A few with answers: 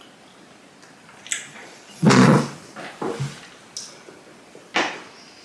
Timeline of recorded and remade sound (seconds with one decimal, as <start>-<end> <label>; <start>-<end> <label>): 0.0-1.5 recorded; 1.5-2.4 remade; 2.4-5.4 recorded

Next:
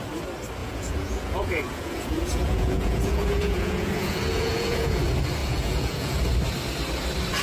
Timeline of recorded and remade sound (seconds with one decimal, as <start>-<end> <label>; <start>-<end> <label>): 0.0-0.6 recorded; 0.6-5.0 remade; 5.0-5.4 recorded; 5.4-6.2 remade; 6.2-7.4 recorded

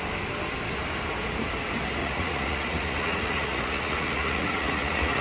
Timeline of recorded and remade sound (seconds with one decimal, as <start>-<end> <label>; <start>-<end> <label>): 0.0-2.0 recorded; 2.0-5.2 remade

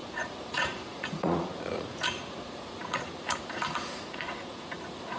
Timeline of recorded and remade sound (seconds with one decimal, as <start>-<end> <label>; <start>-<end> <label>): 0.0-5.2 remade

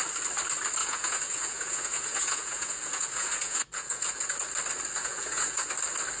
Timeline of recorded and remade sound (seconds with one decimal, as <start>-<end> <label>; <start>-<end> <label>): 0.0-0.8 recorded; 0.8-4.5 remade; 4.5-5.0 recorded; 5.0-5.7 remade; 5.7-6.2 recorded